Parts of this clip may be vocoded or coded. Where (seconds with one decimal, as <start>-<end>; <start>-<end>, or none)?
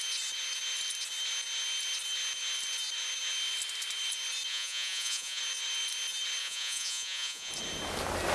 4.5-5.4; 6.4-7.5